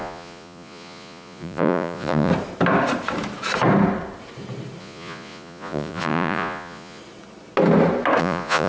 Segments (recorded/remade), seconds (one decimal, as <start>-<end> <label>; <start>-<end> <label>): 0.0-2.3 remade; 2.3-4.8 recorded; 4.8-7.0 remade; 7.0-8.2 recorded; 8.2-8.7 remade